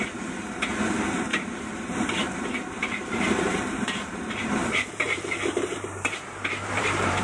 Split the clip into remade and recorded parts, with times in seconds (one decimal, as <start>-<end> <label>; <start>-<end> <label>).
0.0-1.3 recorded; 1.3-2.4 remade; 2.4-2.8 recorded; 2.8-7.2 remade